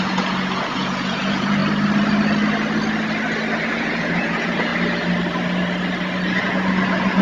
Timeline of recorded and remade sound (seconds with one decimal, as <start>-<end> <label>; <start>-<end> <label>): 0.0-1.6 remade; 1.6-3.7 recorded; 3.7-4.7 remade; 4.7-6.4 recorded; 6.4-7.2 remade